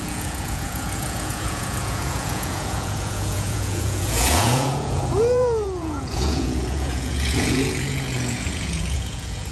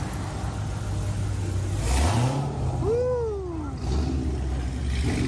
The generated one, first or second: first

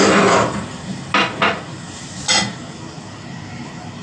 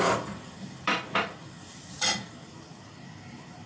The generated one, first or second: second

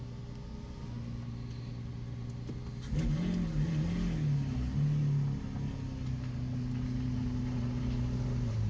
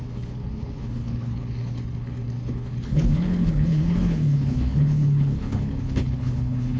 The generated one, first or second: second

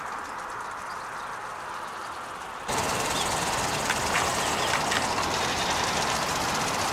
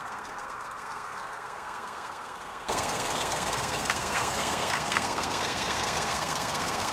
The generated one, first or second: second